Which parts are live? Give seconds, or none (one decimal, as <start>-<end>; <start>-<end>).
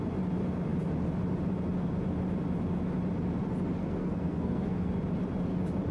0.0-3.8; 4.9-5.9